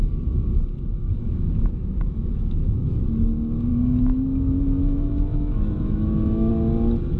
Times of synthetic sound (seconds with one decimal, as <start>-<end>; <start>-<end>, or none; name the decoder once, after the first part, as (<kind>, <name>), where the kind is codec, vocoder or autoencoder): 0.9-3.1 (autoencoder, DAC-VAE); 3.7-6.5